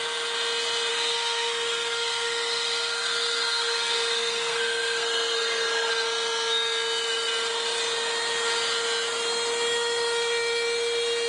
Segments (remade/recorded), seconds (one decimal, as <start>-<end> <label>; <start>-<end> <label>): 0.0-0.9 recorded; 0.9-5.9 remade; 5.9-11.3 recorded